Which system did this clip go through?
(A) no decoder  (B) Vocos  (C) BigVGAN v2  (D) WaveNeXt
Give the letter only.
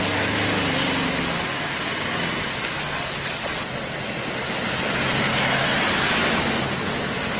A